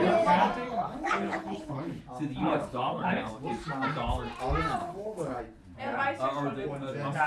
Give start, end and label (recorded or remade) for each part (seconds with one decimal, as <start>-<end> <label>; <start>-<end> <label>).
0.0-0.7 recorded; 0.7-2.0 remade; 2.0-2.4 recorded; 2.4-3.3 remade; 3.3-4.8 recorded; 4.8-5.4 remade; 5.4-7.3 recorded